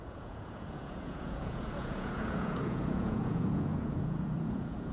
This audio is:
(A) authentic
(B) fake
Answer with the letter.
B